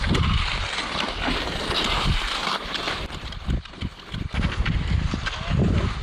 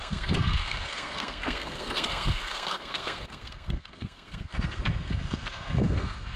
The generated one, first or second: second